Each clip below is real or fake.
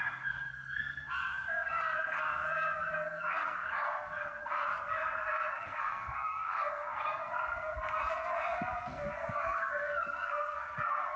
fake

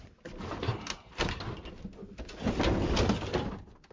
real